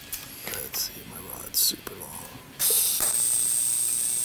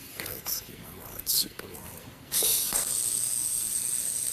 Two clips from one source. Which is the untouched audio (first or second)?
first